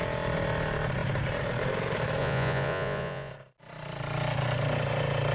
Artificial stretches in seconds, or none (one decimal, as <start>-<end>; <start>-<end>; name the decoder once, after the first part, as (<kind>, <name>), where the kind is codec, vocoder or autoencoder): 2.2-3.3 (vocoder, Vocos)

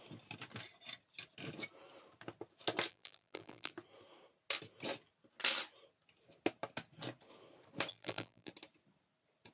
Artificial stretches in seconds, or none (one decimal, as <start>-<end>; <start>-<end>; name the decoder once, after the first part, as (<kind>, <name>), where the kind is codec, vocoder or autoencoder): 2.9-3.7 (vocoder, BigVGAN v2); 7.9-8.5

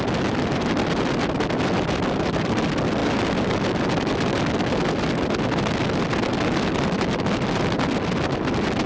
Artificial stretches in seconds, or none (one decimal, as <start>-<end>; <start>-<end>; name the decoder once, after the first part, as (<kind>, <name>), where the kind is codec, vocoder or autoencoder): none

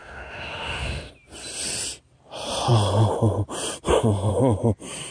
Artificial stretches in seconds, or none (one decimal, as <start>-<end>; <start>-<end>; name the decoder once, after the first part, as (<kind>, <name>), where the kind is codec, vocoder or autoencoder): 0.0-1.1 (autoencoder, DAC-VAE)

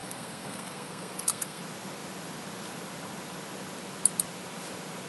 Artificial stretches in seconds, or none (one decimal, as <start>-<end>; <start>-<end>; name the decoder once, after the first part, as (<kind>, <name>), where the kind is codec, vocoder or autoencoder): 0.0-1.6 (codec, SNAC)

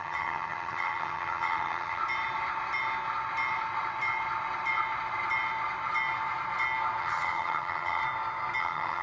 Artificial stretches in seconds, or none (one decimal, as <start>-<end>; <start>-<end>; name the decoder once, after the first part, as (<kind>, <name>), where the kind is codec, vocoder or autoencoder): 0.0-2.0 (vocoder, HiFi-GAN); 7.0-8.0; 8.6-9.0

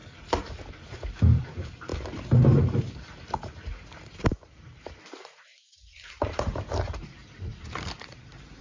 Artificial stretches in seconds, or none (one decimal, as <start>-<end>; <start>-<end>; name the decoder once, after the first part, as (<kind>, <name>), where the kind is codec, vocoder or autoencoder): 1.4-8.6 (vocoder, BigVGAN v2)

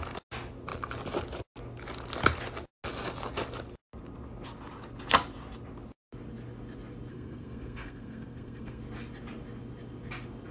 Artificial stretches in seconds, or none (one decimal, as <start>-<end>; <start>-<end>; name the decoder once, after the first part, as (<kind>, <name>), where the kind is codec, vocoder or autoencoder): 7.1-8.8 (codec, SNAC)